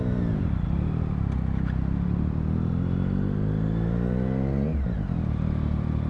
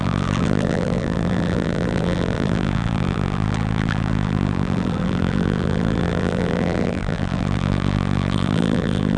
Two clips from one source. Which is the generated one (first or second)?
second